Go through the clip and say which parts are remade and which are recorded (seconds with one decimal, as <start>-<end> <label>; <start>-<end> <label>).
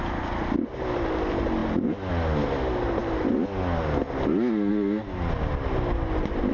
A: 0.0-6.5 recorded